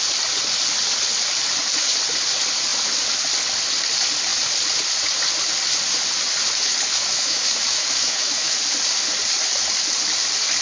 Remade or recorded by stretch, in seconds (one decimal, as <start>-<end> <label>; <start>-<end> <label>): 0.0-6.9 recorded; 6.9-8.6 remade; 8.6-10.6 recorded